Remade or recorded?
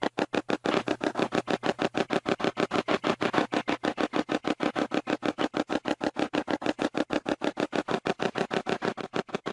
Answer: recorded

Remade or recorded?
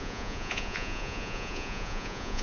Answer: remade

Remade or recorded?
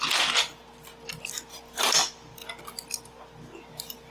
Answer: recorded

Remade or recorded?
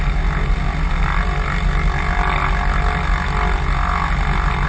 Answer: recorded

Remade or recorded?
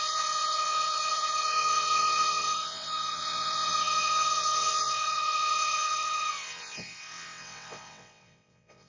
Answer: remade